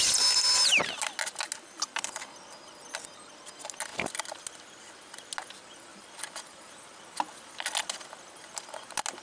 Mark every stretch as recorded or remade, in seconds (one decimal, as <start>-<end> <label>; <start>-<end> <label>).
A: 0.0-9.2 recorded